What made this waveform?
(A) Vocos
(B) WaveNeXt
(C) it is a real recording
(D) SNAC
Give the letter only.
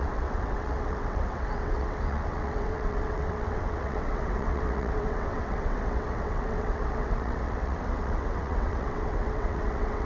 B